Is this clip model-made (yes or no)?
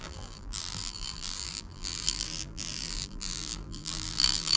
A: yes